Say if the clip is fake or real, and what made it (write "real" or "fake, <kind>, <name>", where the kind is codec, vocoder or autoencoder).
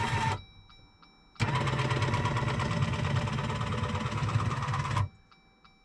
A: real